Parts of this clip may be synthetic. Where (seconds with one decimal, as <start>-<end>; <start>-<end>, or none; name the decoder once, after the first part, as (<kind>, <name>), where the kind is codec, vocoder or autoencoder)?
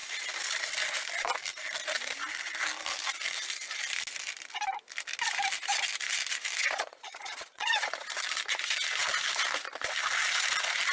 6.6-7.9 (vocoder, Vocos)